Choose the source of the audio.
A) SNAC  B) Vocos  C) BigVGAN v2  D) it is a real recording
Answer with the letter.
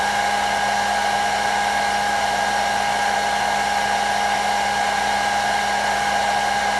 D